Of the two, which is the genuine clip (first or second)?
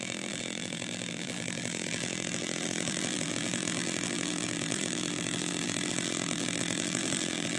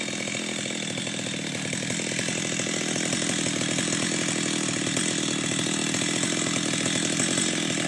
second